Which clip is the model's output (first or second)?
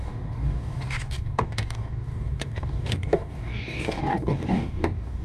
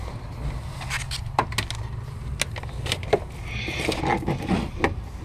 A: first